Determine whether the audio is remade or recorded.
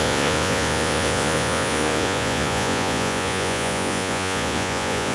remade